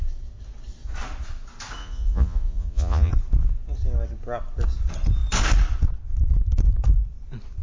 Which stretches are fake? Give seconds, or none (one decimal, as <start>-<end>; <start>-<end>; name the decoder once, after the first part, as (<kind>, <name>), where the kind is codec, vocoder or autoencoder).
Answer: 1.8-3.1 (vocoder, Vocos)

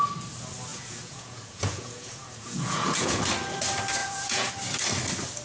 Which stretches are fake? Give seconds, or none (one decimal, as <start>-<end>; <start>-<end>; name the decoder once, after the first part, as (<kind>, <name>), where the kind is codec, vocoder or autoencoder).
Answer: 0.7-3.2 (vocoder, Vocos); 4.0-4.5

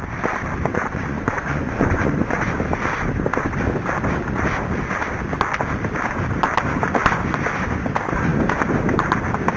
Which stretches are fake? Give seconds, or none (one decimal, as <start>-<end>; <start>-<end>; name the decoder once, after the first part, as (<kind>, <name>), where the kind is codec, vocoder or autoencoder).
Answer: 0.7-2.5 (vocoder, Vocos)

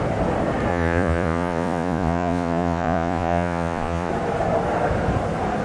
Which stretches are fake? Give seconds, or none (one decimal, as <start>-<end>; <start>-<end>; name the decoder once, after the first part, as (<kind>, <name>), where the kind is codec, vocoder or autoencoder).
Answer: 0.7-4.1 (vocoder, Vocos)

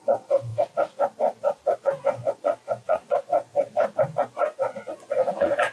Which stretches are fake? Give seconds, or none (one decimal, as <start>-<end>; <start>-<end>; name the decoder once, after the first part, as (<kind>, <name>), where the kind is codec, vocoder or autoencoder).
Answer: 0.0-0.5 (vocoder, Vocos); 1.8-3.5; 4.0-5.7